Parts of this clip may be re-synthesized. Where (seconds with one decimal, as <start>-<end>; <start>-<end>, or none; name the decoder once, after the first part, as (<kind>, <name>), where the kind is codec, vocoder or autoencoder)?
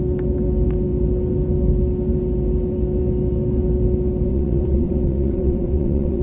4.3-6.2 (vocoder, WaveNeXt)